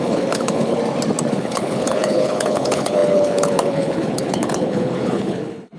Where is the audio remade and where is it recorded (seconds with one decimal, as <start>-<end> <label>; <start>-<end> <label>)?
0.0-0.8 remade; 0.8-1.3 recorded; 1.3-5.8 remade